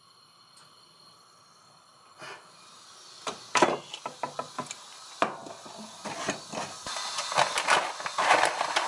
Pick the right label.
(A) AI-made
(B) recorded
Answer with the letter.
B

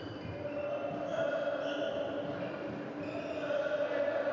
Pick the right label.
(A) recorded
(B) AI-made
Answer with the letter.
A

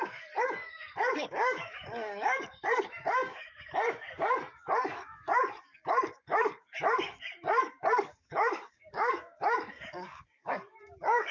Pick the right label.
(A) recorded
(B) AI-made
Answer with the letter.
B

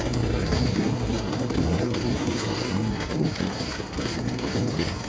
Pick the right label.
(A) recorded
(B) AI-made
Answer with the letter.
B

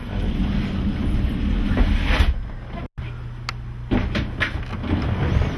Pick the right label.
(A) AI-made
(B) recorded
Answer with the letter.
B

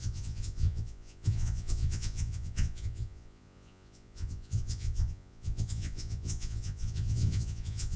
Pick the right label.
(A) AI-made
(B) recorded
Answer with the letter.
A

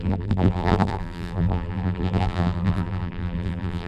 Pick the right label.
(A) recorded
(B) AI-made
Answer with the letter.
B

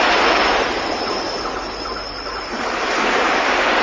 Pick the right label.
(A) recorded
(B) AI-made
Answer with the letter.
B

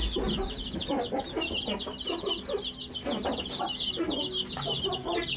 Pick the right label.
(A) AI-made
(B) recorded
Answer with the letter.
B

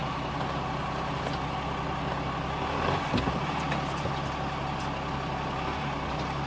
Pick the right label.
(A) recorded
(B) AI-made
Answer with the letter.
A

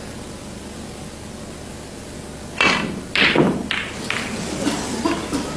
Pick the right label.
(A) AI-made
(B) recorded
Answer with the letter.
B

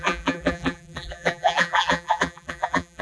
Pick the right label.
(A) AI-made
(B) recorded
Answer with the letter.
A